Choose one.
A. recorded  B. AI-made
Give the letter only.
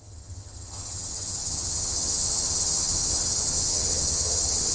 B